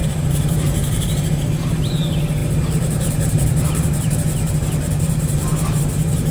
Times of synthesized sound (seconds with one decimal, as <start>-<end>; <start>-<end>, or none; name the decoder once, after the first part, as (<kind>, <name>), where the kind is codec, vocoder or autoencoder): 0.0-1.9 (vocoder, BigVGAN v2); 2.4-5.8